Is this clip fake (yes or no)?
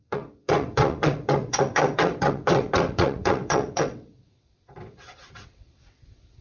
yes